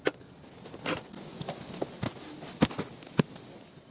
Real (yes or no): yes